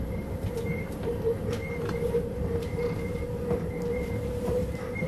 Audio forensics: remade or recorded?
remade